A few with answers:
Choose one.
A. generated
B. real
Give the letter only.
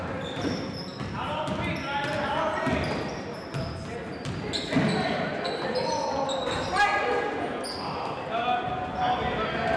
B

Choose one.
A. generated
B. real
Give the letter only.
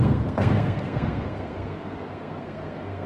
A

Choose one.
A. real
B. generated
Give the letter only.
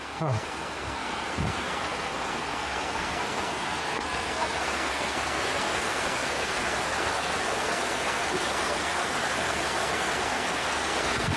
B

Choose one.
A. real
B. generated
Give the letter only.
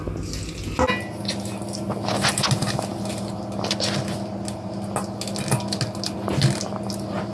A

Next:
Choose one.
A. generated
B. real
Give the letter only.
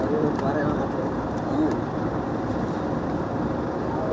B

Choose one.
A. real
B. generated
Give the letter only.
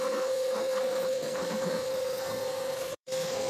B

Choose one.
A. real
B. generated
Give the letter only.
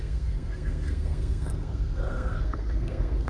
B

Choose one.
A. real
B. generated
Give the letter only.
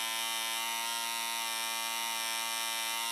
A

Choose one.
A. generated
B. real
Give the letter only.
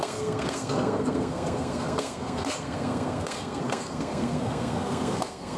A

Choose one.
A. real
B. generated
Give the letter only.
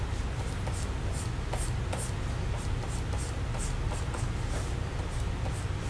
A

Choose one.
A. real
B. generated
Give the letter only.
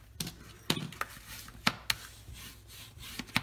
A